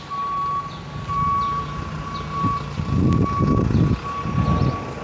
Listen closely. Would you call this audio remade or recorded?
recorded